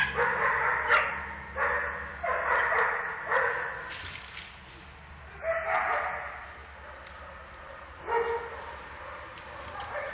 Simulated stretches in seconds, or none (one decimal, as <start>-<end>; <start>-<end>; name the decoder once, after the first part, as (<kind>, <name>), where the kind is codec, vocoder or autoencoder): none